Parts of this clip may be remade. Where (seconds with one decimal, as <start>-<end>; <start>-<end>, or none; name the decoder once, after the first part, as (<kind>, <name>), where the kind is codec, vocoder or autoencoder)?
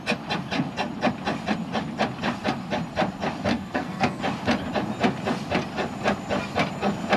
3.5-4.2 (codec, SNAC)